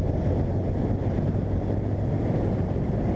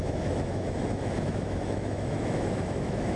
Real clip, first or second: first